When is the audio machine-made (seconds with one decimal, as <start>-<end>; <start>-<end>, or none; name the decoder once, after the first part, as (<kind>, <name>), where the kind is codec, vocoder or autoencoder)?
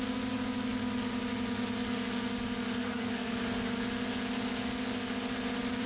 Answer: 2.8-3.3 (codec, SNAC)